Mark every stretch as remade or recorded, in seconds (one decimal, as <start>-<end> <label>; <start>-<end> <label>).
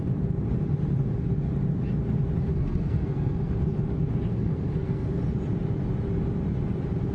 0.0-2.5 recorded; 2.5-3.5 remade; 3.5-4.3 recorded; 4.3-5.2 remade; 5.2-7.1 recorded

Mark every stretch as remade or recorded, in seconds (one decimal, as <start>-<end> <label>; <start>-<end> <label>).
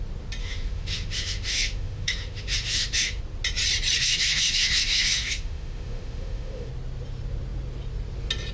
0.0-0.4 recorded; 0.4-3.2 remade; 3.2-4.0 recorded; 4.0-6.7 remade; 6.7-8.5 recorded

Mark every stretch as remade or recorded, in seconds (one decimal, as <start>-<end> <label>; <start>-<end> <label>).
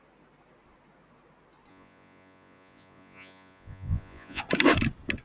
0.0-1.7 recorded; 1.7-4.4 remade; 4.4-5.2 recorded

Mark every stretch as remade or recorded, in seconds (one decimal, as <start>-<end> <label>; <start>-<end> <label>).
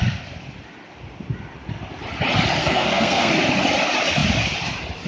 0.0-2.6 recorded; 2.6-3.3 remade; 3.3-5.1 recorded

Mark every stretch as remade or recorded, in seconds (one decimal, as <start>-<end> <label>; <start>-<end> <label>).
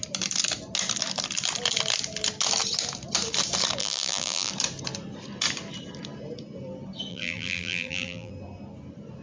0.0-3.8 recorded; 3.8-4.5 remade; 4.5-7.1 recorded; 7.1-8.3 remade; 8.3-9.2 recorded